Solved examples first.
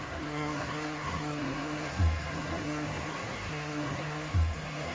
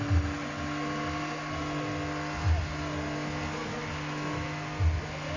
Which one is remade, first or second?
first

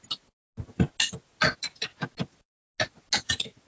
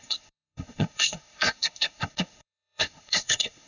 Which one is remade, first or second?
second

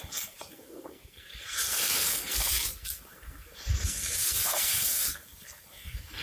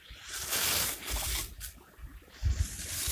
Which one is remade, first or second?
first